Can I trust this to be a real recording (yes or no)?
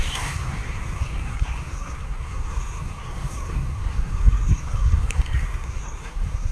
no